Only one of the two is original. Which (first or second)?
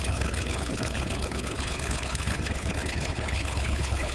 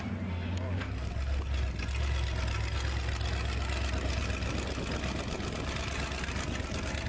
second